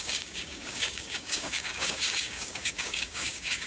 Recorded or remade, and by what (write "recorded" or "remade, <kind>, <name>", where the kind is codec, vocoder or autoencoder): remade, codec, DAC